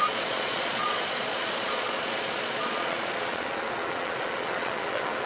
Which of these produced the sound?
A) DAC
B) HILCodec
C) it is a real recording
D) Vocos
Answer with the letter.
D